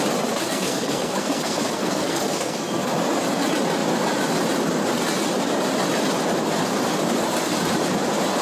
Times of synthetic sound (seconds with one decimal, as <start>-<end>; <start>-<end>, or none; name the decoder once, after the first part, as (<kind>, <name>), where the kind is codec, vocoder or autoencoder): 0.4-2.9 (codec, SNAC)

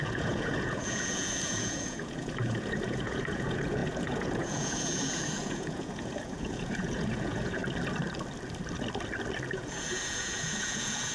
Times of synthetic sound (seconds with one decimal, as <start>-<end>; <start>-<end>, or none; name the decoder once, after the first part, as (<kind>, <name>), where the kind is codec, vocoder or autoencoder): 0.0-7.6 (vocoder, Vocos); 9.5-11.1